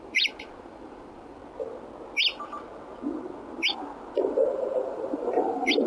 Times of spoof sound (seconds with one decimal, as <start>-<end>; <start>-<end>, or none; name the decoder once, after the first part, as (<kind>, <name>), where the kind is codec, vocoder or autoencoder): 0.0-1.4 (vocoder, BigVGAN v2); 4.9-5.9